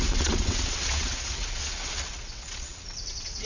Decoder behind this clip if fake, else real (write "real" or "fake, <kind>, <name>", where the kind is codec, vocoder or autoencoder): fake, vocoder, WaveNeXt